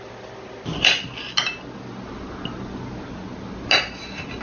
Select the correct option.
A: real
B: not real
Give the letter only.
A